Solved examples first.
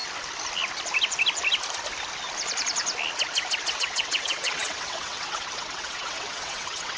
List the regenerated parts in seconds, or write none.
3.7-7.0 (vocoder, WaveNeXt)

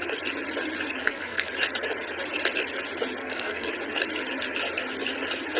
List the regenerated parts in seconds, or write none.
1.0-1.5 (codec, SNAC); 3.2-3.7

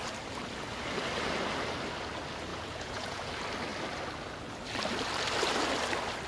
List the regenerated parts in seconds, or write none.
2.5-3.3 (vocoder, Vocos)

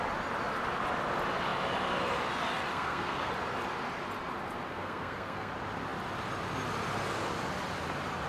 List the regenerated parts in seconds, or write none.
2.7-3.3 (codec, SNAC); 4.7-5.5

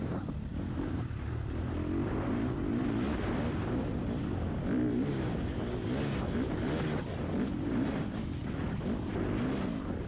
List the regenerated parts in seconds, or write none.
0.5-1.3 (vocoder, BigVGAN v2)

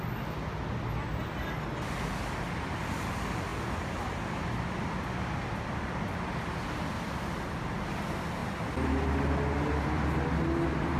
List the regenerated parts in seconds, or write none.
none

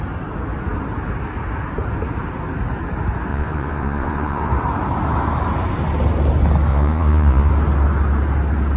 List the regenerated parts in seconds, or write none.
3.3-4.5 (vocoder, Vocos); 6.7-7.5

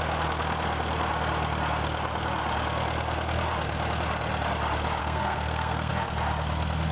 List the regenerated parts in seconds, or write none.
5.0-5.9 (codec, SNAC)